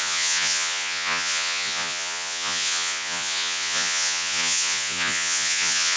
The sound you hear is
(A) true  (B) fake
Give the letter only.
B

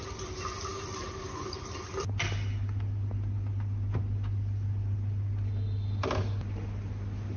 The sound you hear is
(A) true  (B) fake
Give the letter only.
A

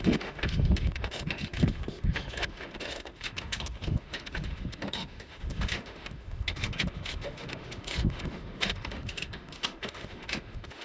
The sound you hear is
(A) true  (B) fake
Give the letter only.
B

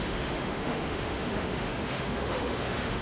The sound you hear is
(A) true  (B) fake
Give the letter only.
B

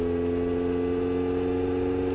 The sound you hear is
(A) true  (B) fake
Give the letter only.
A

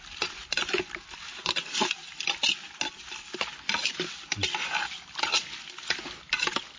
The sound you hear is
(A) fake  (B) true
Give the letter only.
B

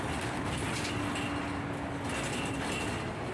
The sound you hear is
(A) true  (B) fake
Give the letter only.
A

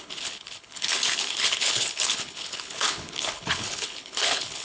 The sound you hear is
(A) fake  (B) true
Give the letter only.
A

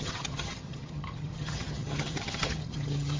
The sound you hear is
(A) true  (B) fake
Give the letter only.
B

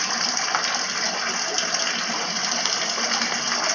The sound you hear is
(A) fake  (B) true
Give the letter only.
B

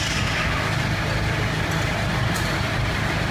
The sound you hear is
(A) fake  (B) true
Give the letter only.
B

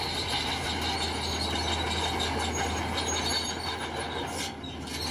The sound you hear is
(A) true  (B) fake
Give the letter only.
A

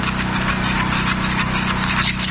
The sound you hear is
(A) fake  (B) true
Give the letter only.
B